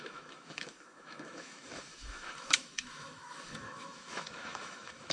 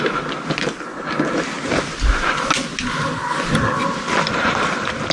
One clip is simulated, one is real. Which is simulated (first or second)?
first